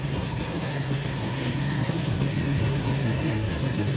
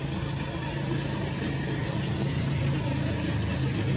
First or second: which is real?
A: second